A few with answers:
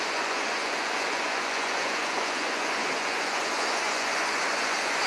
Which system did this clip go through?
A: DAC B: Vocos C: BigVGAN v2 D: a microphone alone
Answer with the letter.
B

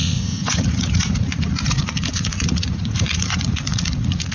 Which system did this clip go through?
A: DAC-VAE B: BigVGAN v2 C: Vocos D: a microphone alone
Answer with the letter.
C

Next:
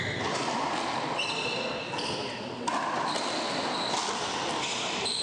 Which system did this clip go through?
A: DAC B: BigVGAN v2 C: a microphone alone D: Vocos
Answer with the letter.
C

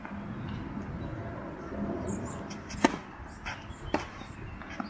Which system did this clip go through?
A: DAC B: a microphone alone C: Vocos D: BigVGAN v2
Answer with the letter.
B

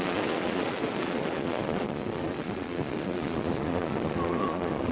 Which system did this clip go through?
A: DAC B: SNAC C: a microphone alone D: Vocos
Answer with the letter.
D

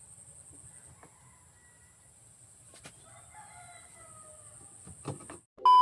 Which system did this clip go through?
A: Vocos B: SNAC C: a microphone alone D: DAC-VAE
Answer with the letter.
C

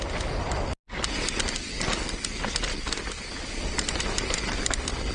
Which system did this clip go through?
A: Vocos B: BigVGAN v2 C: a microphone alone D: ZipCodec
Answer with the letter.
C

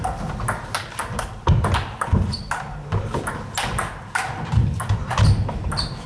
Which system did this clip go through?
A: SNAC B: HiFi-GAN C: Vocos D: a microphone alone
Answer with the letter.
D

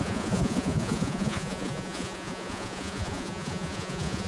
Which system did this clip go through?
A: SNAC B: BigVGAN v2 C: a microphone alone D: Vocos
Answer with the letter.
D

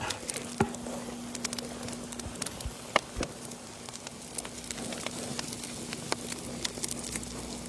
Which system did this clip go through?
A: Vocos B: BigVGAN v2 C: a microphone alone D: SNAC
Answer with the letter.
C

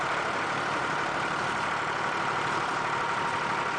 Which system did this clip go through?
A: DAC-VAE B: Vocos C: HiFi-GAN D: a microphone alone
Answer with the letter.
D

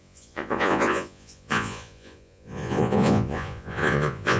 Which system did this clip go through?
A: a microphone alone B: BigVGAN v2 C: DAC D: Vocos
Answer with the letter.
D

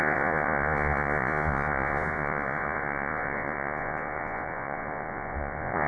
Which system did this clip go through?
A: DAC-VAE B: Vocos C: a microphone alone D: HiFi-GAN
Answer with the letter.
B